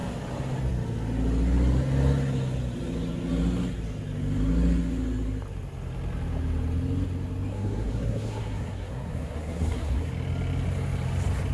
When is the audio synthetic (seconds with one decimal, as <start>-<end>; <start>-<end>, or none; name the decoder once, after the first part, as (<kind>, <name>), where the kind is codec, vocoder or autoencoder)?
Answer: 7.5-10.1 (codec, SNAC)